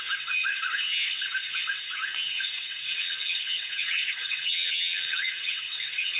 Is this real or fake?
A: fake